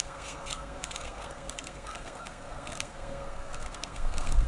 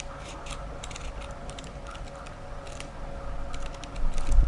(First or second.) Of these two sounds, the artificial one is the first